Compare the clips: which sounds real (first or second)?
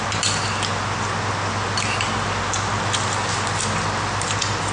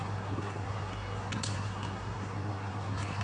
first